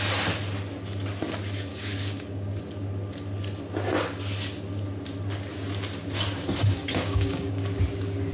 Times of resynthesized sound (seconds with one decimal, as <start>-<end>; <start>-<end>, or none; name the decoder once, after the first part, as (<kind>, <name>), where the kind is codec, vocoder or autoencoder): 1.7-2.6 (codec, DAC); 6.6-7.8